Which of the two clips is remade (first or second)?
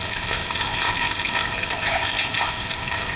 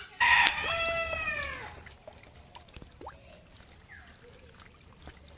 first